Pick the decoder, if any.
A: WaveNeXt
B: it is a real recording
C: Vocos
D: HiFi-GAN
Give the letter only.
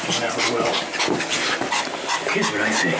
B